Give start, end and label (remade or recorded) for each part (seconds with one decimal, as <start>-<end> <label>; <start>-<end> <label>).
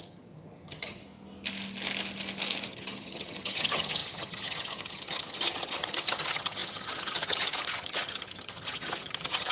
0.0-1.0 remade; 1.0-2.7 recorded; 2.7-9.5 remade